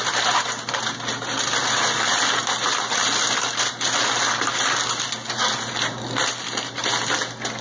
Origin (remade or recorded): recorded